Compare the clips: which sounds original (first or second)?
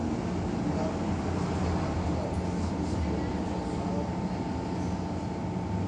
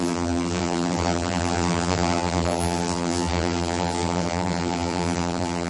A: first